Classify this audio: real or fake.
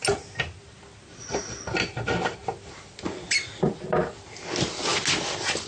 real